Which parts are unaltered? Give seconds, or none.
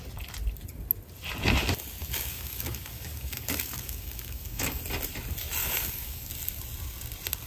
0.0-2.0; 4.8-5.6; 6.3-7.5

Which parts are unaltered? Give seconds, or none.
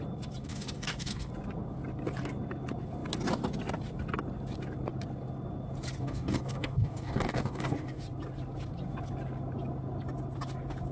0.0-0.4; 1.3-6.0; 8.0-10.9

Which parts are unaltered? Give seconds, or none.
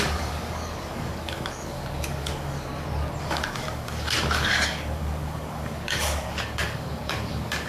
2.7-3.2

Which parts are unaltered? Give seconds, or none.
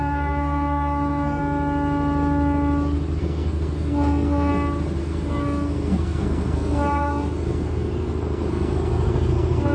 1.4-3.2; 4.5-5.0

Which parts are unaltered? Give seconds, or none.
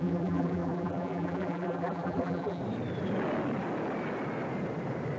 2.6-5.2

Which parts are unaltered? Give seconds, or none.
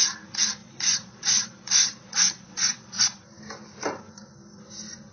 0.0-0.6; 3.2-5.1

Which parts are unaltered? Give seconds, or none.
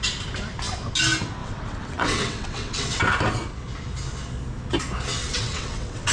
0.0-1.4; 3.0-5.2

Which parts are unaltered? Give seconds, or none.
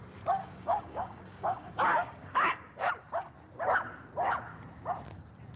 0.0-0.4; 2.9-5.6